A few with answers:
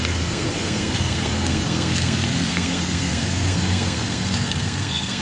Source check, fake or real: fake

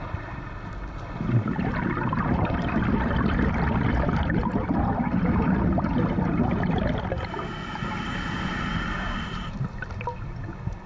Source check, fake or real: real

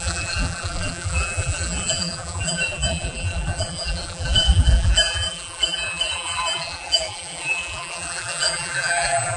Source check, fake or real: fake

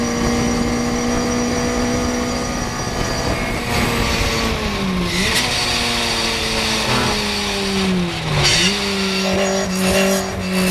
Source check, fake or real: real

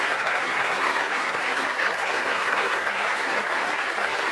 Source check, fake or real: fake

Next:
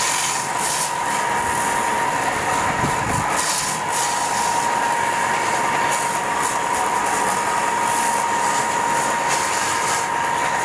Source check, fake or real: real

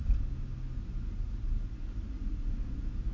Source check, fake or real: real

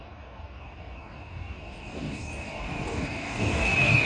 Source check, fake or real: fake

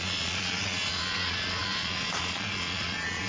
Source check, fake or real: fake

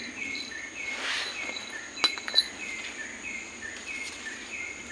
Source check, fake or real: real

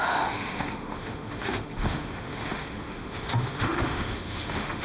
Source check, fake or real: fake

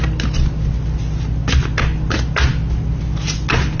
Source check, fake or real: real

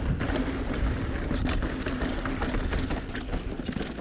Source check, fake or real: real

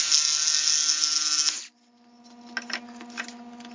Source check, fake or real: real